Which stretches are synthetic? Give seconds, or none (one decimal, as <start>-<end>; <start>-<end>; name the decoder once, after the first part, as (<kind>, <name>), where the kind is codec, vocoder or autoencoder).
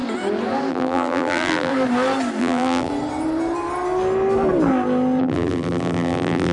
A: 0.7-1.7 (vocoder, BigVGAN v2); 2.4-2.9; 5.2-6.5